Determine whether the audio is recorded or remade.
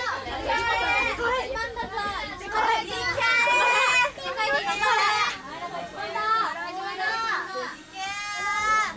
recorded